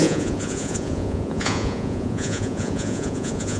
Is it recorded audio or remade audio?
remade